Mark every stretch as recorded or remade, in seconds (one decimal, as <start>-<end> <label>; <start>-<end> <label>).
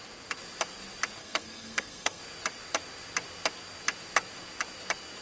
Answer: 0.0-1.2 recorded; 1.2-2.2 remade; 2.2-5.2 recorded